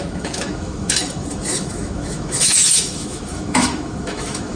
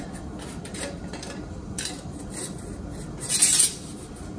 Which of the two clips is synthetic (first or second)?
first